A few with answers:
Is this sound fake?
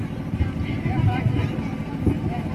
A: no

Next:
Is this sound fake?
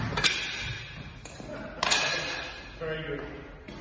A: no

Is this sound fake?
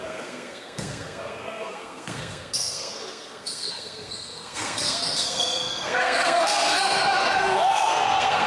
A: yes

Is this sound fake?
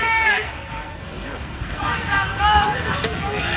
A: yes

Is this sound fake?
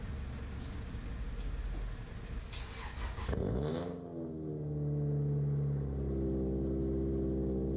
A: no